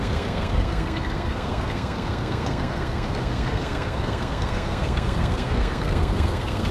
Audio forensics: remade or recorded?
remade